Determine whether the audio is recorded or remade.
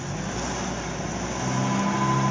recorded